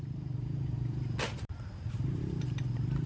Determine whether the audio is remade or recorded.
remade